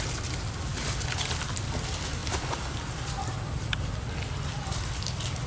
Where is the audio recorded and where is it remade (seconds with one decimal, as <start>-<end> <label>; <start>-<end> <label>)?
0.0-5.5 recorded